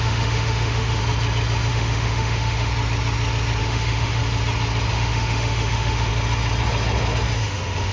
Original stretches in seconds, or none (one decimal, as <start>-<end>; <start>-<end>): 1.0-1.7; 2.7-3.6; 4.2-4.9; 6.1-7.4